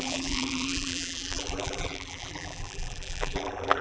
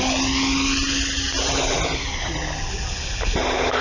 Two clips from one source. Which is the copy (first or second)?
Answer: first